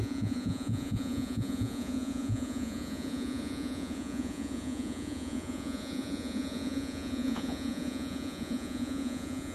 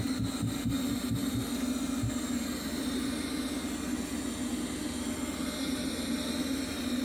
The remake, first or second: first